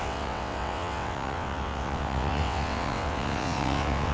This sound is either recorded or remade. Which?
remade